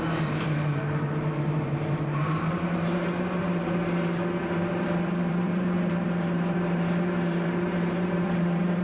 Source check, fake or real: fake